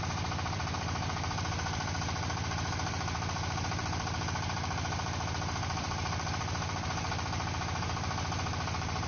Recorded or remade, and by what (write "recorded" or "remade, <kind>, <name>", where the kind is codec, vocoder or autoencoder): remade, vocoder, BigVGAN v2